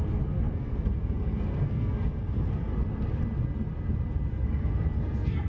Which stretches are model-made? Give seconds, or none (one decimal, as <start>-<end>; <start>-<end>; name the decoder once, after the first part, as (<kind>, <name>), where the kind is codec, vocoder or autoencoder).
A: 0.0-2.7 (codec, SNAC); 4.3-5.5